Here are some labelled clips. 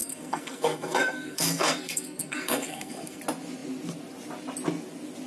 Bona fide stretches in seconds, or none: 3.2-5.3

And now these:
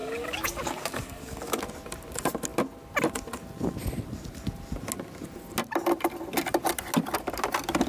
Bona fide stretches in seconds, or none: 1.6-7.9